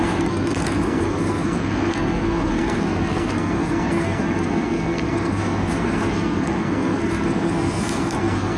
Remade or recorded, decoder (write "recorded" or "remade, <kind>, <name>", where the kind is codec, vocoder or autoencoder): remade, codec, SNAC